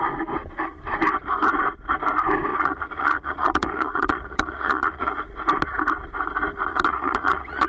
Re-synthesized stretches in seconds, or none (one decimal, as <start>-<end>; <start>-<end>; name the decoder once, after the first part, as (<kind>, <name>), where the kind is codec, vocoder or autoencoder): 2.5-5.2 (vocoder, Vocos); 6.7-7.7